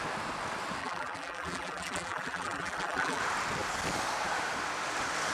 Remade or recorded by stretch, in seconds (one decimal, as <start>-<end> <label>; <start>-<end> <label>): 0.0-0.8 recorded; 0.8-3.2 remade; 3.2-5.3 recorded